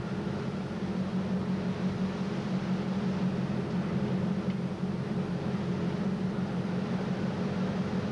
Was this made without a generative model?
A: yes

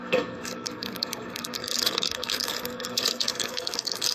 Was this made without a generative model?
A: no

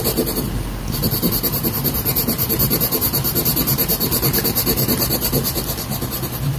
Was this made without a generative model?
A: yes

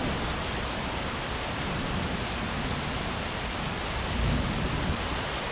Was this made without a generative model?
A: yes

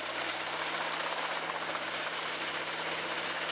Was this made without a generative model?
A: yes